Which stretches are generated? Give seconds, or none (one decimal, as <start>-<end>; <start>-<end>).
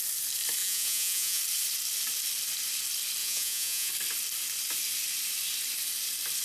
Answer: 0.6-1.4; 3.2-3.9